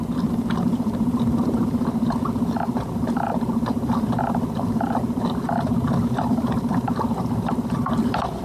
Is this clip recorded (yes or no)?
no